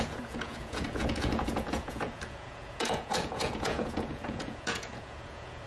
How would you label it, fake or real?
fake